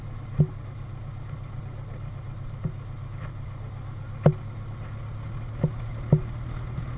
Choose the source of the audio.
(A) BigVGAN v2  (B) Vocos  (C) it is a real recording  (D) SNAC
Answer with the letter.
C